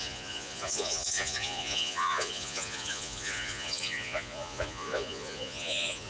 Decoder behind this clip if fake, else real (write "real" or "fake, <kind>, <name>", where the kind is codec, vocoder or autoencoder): fake, vocoder, Vocos